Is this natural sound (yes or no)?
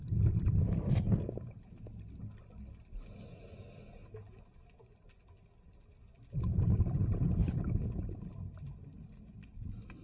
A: yes